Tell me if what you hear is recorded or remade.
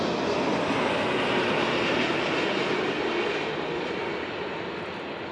recorded